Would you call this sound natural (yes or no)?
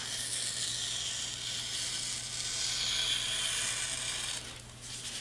yes